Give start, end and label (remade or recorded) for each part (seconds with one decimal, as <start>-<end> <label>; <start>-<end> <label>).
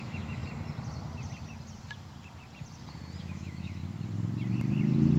0.0-0.4 remade; 0.4-3.2 recorded; 3.2-3.8 remade; 3.8-5.2 recorded